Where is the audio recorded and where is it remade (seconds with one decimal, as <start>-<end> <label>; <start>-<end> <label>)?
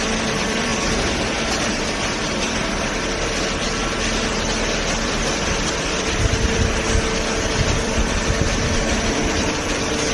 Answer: 0.0-0.7 remade; 0.7-5.0 recorded; 5.0-10.1 remade